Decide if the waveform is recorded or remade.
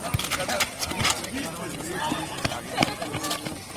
remade